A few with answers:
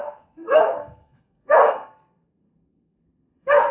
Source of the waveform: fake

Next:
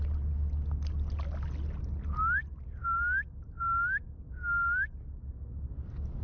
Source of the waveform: real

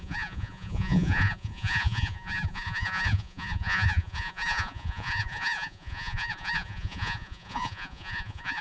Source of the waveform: fake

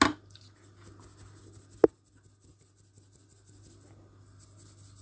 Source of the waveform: real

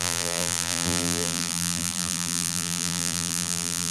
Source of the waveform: fake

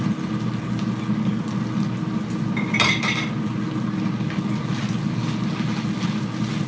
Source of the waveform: real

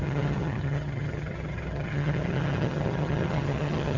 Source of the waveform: fake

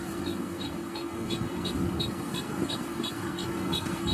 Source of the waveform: fake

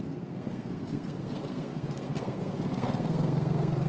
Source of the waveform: fake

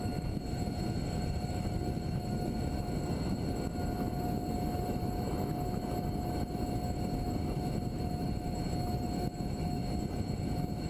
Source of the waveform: fake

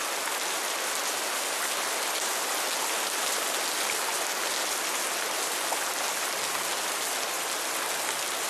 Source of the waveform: real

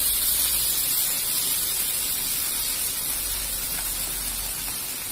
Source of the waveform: real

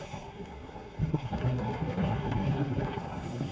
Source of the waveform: fake